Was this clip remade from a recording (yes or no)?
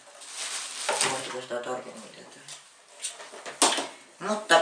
no